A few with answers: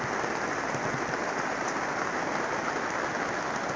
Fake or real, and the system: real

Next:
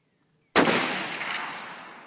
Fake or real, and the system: real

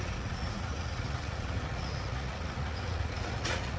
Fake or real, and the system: fake, vocoder, Vocos